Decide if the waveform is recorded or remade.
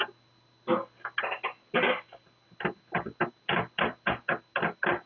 recorded